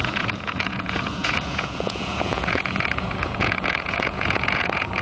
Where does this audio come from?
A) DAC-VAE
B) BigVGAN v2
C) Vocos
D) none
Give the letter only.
C